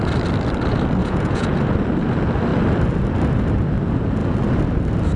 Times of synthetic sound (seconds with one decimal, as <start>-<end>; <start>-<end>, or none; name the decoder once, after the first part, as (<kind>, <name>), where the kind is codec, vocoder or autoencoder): 1.0-1.6 (vocoder, Vocos)